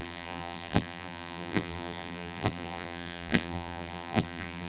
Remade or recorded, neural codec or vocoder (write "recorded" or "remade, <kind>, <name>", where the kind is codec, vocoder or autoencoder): remade, vocoder, BigVGAN v2